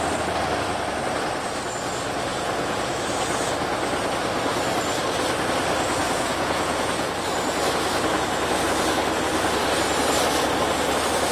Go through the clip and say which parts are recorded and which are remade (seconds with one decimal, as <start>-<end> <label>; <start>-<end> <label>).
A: 0.0-2.3 recorded; 2.3-2.9 remade; 2.9-6.0 recorded; 6.0-7.1 remade; 7.1-11.3 recorded